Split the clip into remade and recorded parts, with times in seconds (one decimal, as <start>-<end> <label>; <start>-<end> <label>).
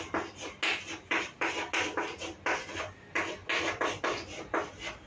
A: 0.0-5.1 recorded